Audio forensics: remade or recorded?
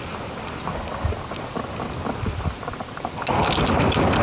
recorded